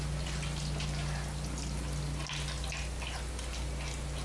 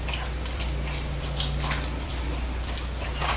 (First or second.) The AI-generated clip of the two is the second